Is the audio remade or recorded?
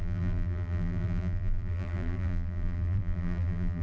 remade